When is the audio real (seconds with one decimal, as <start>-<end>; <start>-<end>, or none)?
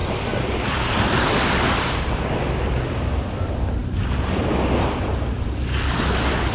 0.0-6.5